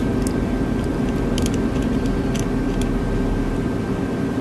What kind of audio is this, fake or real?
real